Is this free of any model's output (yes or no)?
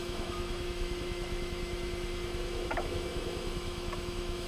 no